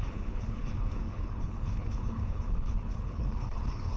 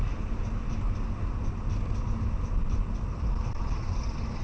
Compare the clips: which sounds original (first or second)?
second